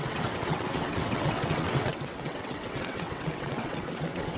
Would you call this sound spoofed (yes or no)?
yes